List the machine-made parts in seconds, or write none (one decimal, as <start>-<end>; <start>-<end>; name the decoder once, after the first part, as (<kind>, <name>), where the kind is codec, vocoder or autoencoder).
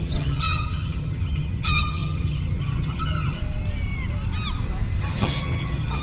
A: 0.0-3.4 (vocoder, HiFi-GAN); 5.0-6.0